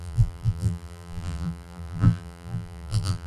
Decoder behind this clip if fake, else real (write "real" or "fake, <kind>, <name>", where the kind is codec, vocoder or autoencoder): fake, vocoder, BigVGAN v2